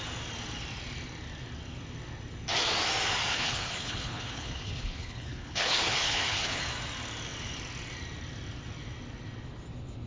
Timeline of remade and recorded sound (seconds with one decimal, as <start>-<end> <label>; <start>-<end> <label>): 0.0-3.3 recorded; 3.3-6.6 remade; 6.6-10.1 recorded